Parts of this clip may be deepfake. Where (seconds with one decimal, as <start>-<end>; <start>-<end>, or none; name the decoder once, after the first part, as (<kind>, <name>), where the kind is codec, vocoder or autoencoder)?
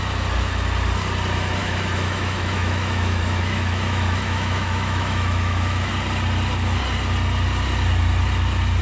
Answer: 1.6-5.9 (autoencoder, DAC-VAE)